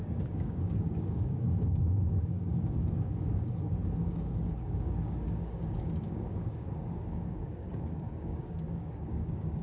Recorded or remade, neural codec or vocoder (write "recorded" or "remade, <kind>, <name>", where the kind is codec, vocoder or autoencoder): remade, codec, DAC